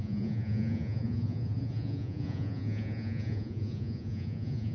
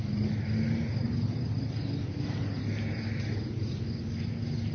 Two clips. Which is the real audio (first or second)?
second